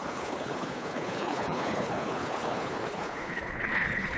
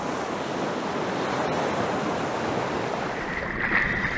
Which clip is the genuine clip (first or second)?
second